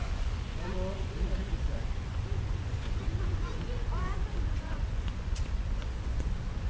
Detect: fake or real fake